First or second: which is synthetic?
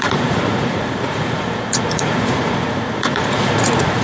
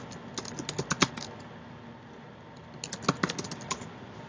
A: first